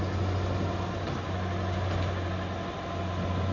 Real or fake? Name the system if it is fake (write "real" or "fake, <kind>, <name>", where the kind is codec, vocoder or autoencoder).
real